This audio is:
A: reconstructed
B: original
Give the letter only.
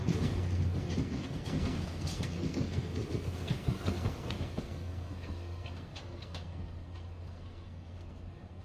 A